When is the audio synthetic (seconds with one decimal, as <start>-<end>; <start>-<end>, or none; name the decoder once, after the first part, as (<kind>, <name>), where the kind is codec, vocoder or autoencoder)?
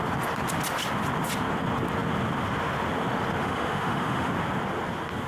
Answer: 3.4-4.3 (autoencoder, DAC-VAE)